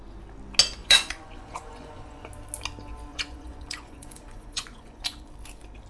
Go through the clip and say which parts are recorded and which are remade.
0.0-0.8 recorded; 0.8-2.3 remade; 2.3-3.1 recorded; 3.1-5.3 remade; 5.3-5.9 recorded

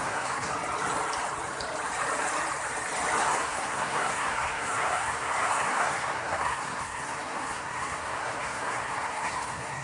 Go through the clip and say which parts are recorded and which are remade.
0.0-0.5 remade; 0.5-3.2 recorded; 3.2-9.8 remade

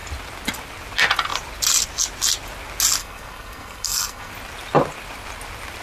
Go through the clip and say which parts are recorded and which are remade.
0.0-3.0 recorded; 3.0-4.3 remade; 4.3-5.8 recorded

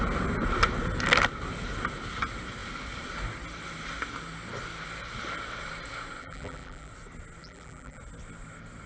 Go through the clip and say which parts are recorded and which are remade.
0.0-6.2 recorded; 6.2-6.9 remade; 6.9-7.4 recorded; 7.4-8.0 remade; 8.0-8.9 recorded

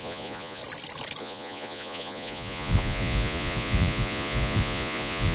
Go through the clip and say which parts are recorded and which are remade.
0.0-0.6 remade; 0.6-1.2 recorded; 1.2-5.3 remade